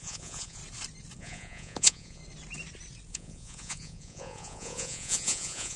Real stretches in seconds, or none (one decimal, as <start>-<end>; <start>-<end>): 0.6-1.2; 2.2-3.1